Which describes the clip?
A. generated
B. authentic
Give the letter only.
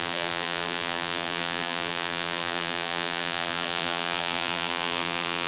A